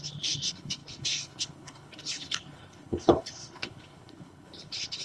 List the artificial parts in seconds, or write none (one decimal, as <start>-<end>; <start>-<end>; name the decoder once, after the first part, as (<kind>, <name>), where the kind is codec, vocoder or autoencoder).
0.0-5.0 (codec, HILCodec)